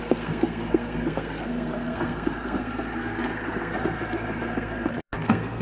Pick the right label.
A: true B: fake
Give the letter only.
B